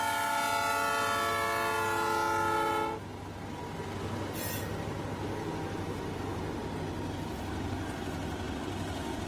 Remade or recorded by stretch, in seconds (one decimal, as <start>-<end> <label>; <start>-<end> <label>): 0.0-9.3 recorded